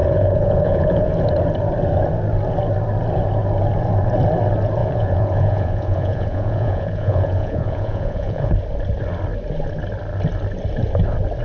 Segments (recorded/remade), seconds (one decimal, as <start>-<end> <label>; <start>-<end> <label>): 0.0-1.1 remade; 1.1-4.8 recorded; 4.8-8.5 remade; 8.5-11.4 recorded